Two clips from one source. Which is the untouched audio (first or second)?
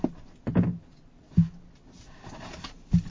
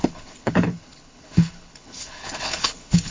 first